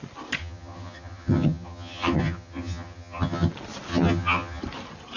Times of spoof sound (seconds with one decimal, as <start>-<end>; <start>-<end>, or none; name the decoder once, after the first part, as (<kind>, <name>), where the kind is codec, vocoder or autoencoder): 0.4-3.5 (vocoder, HiFi-GAN); 3.9-4.6